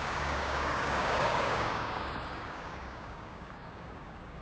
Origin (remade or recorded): remade